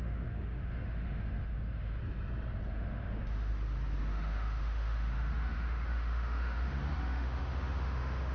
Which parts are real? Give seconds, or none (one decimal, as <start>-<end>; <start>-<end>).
2.0-2.7; 3.5-4.0